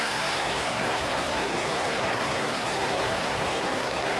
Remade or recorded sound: remade